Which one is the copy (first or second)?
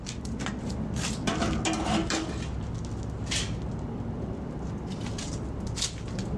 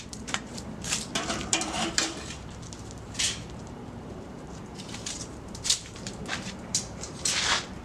second